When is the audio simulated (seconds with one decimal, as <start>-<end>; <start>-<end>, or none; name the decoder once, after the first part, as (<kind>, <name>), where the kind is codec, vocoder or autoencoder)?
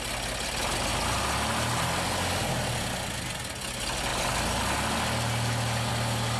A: none